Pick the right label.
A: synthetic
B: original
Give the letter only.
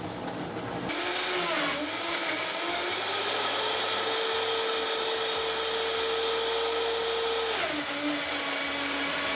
B